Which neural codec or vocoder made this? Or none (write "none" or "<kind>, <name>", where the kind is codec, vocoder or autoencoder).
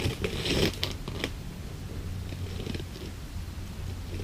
none